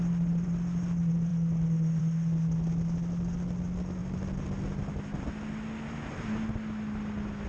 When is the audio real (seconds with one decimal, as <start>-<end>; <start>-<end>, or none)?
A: 0.0-7.5